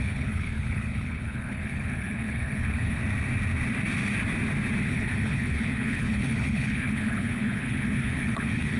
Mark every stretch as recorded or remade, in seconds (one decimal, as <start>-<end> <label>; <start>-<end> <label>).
0.0-3.0 remade; 3.0-4.8 recorded; 4.8-8.8 remade